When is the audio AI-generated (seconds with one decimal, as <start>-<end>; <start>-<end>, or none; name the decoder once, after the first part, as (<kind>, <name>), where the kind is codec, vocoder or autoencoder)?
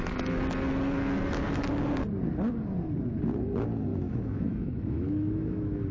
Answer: 3.9-5.9 (autoencoder, DAC-VAE)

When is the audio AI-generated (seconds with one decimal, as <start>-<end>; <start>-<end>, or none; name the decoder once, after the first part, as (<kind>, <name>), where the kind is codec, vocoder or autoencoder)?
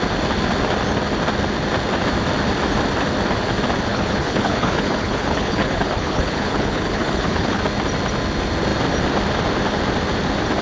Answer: 3.9-7.6 (codec, HILCodec)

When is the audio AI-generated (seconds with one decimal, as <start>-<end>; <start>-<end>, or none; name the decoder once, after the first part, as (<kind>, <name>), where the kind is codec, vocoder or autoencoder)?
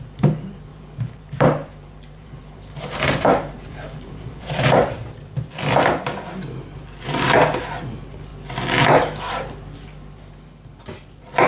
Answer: 0.7-5.1 (vocoder, BigVGAN v2)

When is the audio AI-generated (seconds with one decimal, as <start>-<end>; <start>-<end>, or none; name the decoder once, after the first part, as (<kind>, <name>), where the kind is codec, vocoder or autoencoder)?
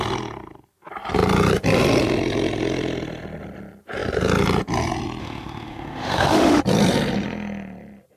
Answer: 5.2-6.6 (autoencoder, DAC-VAE)